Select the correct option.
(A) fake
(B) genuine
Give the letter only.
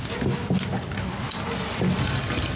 B